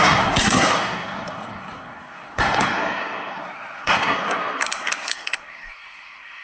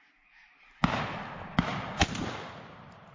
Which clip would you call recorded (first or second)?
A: second